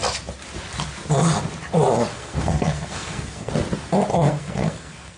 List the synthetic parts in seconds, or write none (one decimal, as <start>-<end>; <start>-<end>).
2.1-3.5; 4.1-5.2